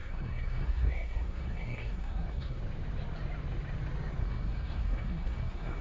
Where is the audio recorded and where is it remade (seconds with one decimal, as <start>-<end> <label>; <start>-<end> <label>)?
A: 0.0-2.6 remade; 2.6-4.2 recorded; 4.2-5.8 remade